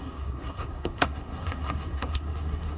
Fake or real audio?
fake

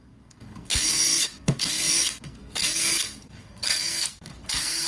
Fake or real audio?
fake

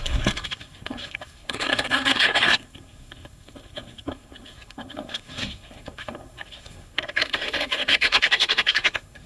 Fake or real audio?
fake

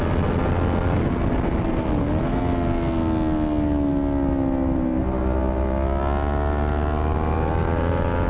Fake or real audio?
real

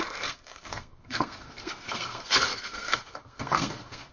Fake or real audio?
fake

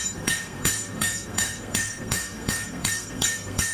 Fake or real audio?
fake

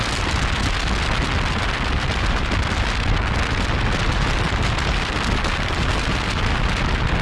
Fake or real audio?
real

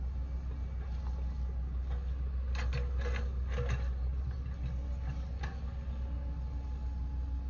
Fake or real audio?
real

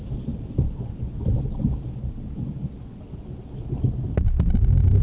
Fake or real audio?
real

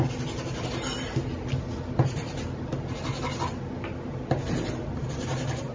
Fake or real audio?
real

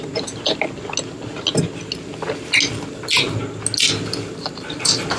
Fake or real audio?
real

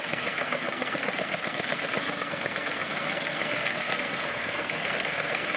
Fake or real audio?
fake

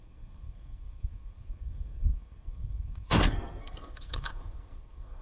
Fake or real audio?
fake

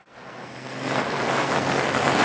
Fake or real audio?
fake